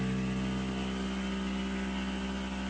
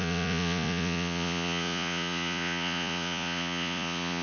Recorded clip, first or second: first